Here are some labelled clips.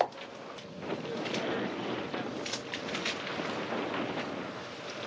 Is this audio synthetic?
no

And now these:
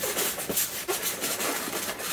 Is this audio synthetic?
no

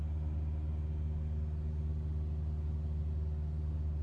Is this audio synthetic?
no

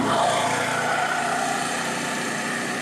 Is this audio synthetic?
yes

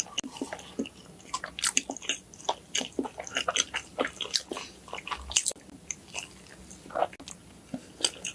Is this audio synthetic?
no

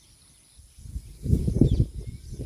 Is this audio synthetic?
no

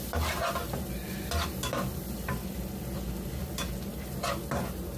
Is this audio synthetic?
no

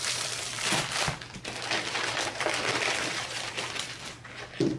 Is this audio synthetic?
yes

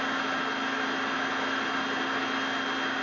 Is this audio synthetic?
no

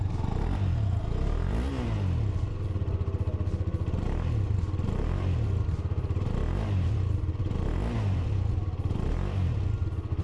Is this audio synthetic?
no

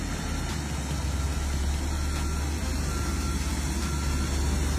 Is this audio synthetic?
no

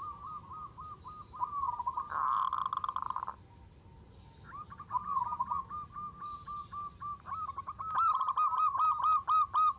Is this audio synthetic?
no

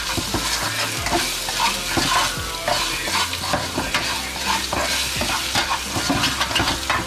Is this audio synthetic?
no